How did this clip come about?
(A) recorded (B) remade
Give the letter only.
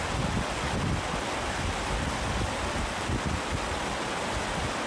A